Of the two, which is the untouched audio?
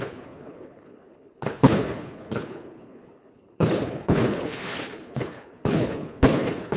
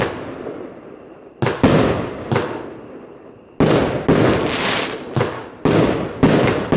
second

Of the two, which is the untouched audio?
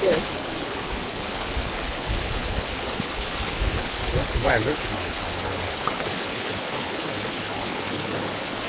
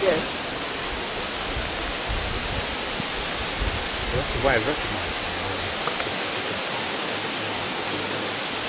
second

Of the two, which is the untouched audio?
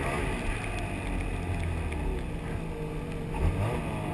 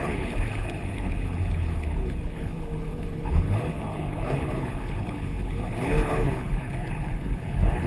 first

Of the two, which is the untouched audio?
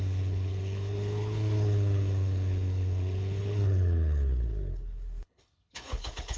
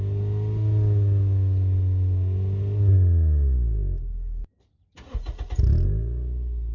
second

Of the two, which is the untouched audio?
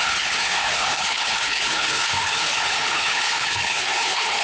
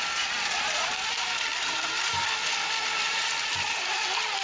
second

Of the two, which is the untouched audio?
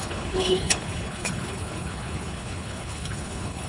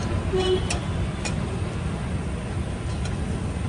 second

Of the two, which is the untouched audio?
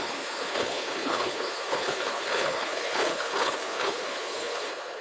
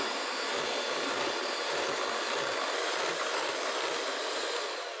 second